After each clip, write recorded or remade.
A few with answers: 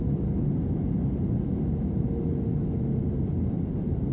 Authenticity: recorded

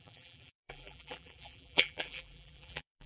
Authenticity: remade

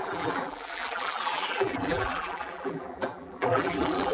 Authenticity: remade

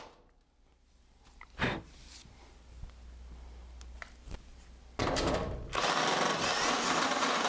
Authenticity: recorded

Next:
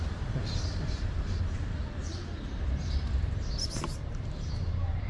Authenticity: remade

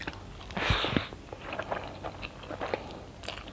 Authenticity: recorded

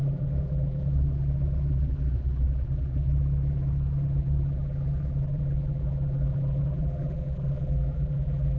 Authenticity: remade